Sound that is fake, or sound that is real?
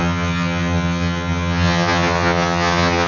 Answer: fake